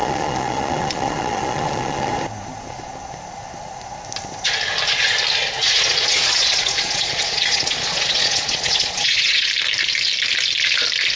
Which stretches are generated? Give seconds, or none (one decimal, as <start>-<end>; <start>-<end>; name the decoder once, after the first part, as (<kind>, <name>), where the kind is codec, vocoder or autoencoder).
0.0-2.1 (vocoder, Vocos); 5.6-9.5